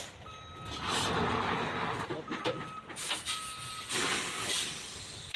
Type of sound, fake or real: real